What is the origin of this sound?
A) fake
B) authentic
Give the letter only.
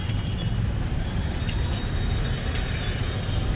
B